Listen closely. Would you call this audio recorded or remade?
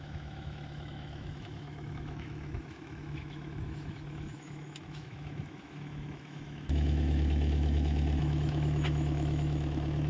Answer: remade